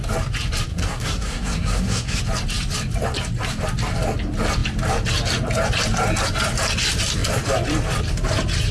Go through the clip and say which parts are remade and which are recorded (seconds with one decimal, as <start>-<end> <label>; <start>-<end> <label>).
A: 0.0-0.7 recorded; 0.7-2.2 remade; 2.2-8.7 recorded